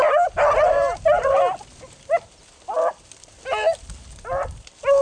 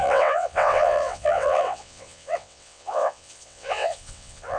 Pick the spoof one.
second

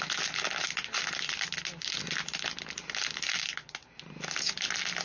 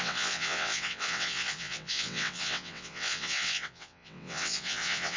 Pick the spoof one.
second